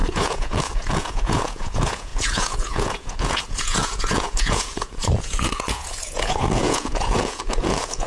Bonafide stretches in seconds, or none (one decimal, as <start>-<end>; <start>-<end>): none